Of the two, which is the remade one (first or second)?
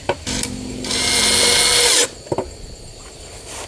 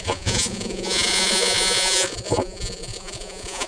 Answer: second